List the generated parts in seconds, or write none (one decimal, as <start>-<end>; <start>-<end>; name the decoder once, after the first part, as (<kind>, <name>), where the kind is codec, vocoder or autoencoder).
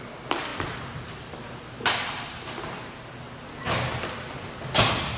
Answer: none